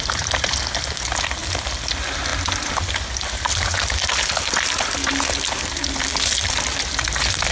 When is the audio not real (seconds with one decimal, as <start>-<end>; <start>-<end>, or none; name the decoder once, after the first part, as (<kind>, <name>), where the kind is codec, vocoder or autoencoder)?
none